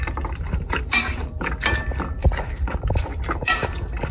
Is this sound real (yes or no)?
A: no